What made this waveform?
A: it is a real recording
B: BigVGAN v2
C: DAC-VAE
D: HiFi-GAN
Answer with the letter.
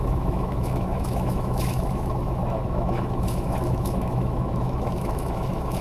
C